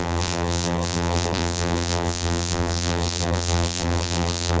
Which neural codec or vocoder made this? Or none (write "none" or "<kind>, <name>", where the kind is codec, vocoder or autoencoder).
vocoder, BigVGAN v2